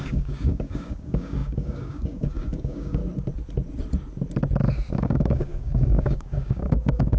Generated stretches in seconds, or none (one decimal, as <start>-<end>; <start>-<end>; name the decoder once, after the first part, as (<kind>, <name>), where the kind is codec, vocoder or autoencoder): 0.0-3.0 (codec, DAC); 4.9-7.2